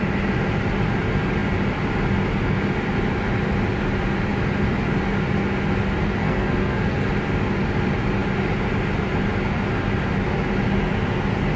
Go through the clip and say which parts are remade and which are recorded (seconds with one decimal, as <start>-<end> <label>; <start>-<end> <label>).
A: 0.0-6.2 recorded; 6.2-7.1 remade; 7.1-11.6 recorded

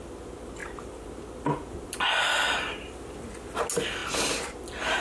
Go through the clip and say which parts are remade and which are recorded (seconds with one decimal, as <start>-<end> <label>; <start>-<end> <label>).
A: 0.0-5.0 recorded

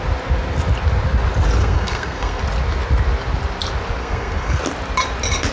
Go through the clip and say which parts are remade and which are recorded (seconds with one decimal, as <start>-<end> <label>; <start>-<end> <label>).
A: 0.0-1.6 recorded; 1.6-2.4 remade; 2.4-4.0 recorded; 4.0-4.6 remade; 4.6-5.5 recorded

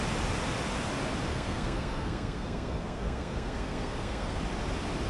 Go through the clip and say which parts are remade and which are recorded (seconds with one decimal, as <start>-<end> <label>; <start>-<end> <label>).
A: 0.0-1.3 recorded; 1.3-4.4 remade; 4.4-5.1 recorded

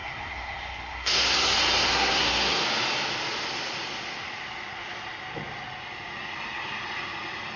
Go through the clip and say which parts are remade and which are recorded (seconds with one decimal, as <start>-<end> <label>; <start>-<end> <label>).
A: 0.0-1.5 remade; 1.5-1.9 recorded; 1.9-2.6 remade; 2.6-7.6 recorded